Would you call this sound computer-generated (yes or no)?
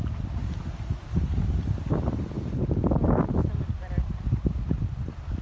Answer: no